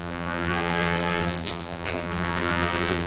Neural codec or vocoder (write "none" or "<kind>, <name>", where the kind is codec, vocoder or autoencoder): vocoder, BigVGAN v2